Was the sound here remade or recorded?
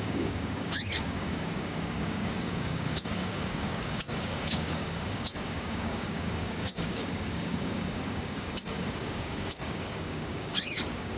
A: remade